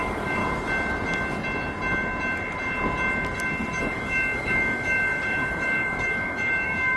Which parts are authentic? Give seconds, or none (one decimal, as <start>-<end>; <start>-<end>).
0.4-3.8